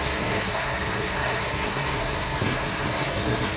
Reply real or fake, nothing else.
fake